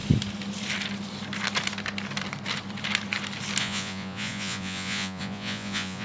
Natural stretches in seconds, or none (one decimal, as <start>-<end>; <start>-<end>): 0.0-3.6

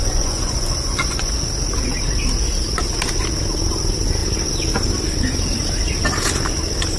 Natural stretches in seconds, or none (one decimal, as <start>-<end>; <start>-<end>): 1.3-7.0

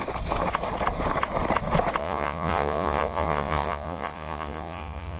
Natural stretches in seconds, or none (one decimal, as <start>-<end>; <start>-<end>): 0.0-2.0

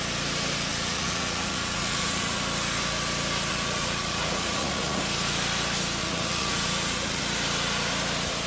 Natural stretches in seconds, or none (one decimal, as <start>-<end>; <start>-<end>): 0.0-0.7; 2.4-3.5; 5.0-6.0; 7.2-8.5

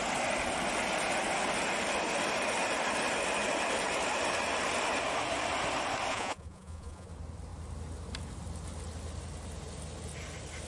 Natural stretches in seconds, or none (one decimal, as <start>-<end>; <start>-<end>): 0.0-6.1; 7.1-10.7